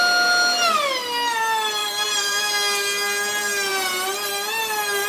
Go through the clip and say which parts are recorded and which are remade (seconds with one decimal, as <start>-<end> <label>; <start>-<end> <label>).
0.0-1.8 recorded; 1.8-2.4 remade; 2.4-5.1 recorded